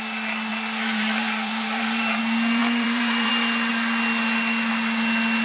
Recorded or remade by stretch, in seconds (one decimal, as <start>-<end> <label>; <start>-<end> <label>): 0.0-0.5 recorded; 0.5-2.2 remade; 2.2-2.6 recorded; 2.6-3.3 remade; 3.3-5.4 recorded

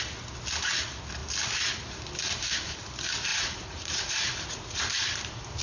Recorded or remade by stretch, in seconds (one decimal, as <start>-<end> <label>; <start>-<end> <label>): 0.0-3.3 recorded; 3.3-4.8 remade; 4.8-5.6 recorded

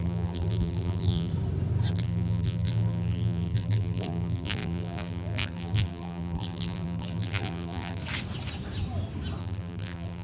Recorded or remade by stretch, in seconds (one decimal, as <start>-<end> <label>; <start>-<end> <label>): 0.0-1.3 remade; 1.3-1.9 recorded; 1.9-8.0 remade; 8.0-9.4 recorded; 9.4-10.2 remade

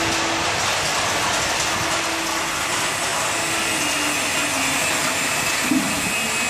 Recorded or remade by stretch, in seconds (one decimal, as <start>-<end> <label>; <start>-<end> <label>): 0.0-6.5 recorded

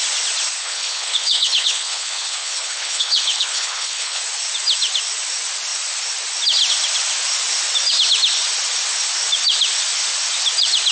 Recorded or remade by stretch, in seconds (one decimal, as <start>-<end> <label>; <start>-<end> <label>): 0.0-0.6 recorded; 0.6-4.2 remade; 4.2-10.9 recorded

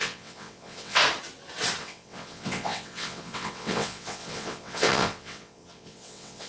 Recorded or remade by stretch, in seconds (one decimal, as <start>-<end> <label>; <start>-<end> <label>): 0.0-1.0 remade; 1.0-1.8 recorded; 1.8-6.5 remade